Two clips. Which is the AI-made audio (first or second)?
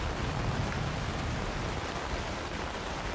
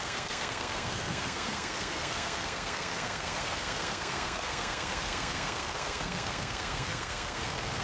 second